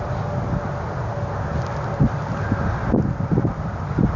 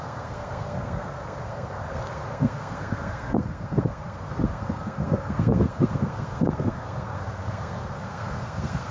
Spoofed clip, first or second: second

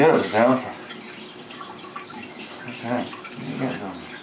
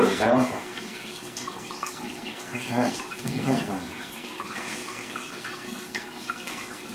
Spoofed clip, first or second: second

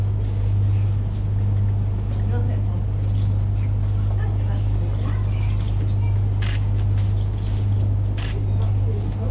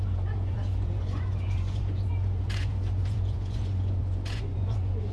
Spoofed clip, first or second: second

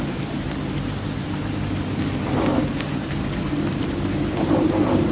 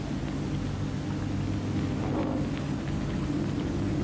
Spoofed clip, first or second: first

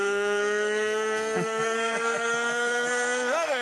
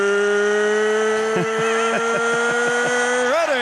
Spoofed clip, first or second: first